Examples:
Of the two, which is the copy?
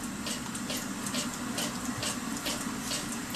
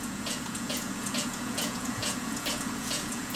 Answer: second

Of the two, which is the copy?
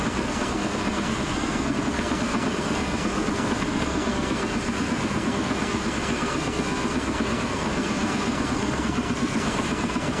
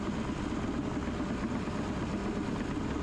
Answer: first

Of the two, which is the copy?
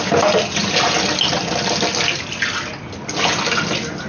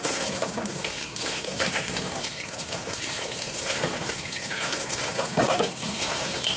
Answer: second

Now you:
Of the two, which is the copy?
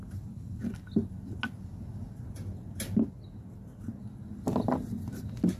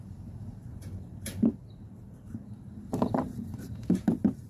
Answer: second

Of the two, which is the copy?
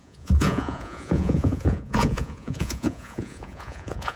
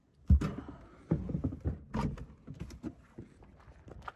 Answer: first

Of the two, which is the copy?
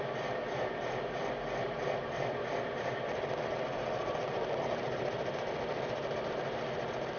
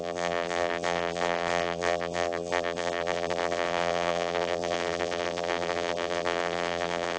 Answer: second